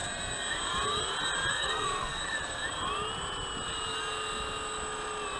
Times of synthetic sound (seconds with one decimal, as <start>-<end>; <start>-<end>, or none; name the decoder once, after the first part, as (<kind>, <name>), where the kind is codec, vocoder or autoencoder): 1.5-2.2 (codec, SNAC)